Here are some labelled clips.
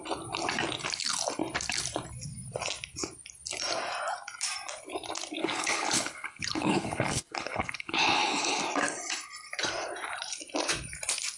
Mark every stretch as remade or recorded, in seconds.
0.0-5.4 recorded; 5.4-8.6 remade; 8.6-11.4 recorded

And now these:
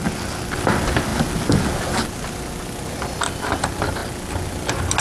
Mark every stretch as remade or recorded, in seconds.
0.0-5.0 recorded

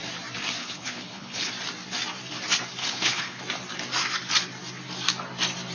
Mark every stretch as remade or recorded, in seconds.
0.0-0.6 recorded; 0.6-1.5 remade; 1.5-2.8 recorded; 2.8-3.4 remade; 3.4-5.7 recorded

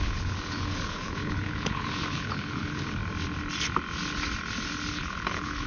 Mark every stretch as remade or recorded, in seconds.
0.0-3.0 remade; 3.0-4.9 recorded; 4.9-5.7 remade

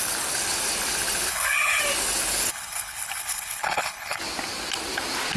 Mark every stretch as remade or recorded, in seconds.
0.0-1.3 recorded; 1.3-1.8 remade; 1.8-2.5 recorded; 2.5-4.2 remade; 4.2-5.4 recorded

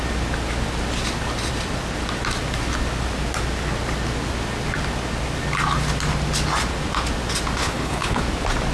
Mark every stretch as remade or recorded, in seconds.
0.0-7.6 recorded; 7.6-8.2 remade; 8.2-8.7 recorded

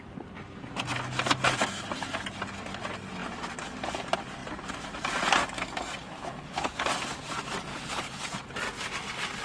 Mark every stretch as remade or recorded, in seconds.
0.0-6.0 recorded; 6.0-6.8 remade; 6.8-7.7 recorded; 7.7-8.2 remade; 8.2-9.4 recorded

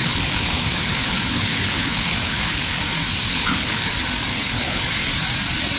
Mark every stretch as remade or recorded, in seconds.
0.0-2.8 remade; 2.8-3.3 recorded; 3.3-3.9 remade; 3.9-4.3 recorded; 4.3-4.9 remade; 4.9-5.8 recorded